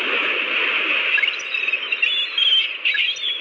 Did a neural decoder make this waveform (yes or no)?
no